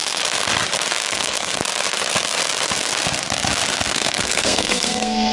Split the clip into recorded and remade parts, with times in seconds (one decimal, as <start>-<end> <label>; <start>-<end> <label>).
0.0-1.1 recorded; 1.1-1.6 remade; 1.6-3.9 recorded; 3.9-5.3 remade